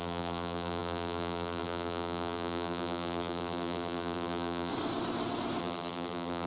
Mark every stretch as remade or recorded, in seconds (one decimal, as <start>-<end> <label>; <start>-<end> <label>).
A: 0.0-4.7 remade; 4.7-5.6 recorded; 5.6-6.5 remade